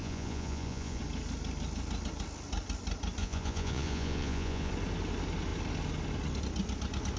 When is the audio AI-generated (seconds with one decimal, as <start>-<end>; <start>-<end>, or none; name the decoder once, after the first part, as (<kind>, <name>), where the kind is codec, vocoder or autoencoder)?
0.0-1.0 (vocoder, Vocos); 3.2-4.7